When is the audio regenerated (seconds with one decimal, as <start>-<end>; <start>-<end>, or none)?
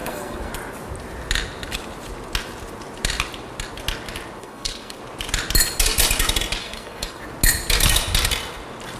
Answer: 0.0-0.5; 4.4-5.0; 6.6-7.2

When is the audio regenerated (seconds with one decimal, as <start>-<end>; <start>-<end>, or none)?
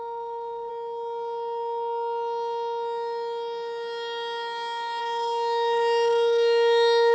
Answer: 0.0-0.7; 5.0-7.1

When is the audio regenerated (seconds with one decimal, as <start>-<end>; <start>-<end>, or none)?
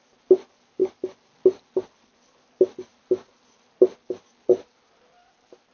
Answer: none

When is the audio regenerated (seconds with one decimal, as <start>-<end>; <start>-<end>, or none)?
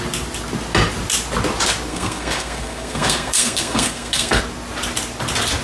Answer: 1.9-4.4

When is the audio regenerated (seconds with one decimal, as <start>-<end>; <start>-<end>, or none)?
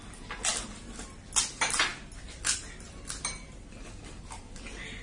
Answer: none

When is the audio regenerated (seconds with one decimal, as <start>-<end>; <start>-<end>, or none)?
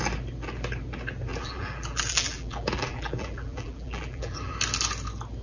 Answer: 1.3-4.5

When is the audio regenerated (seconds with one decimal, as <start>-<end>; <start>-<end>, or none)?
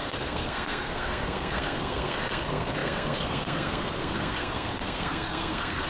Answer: 0.0-5.9